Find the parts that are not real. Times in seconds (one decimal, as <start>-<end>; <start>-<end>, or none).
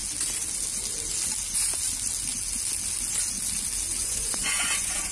4.0-5.1